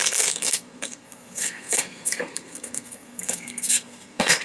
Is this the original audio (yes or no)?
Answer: no